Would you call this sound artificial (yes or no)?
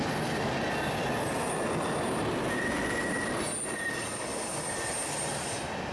no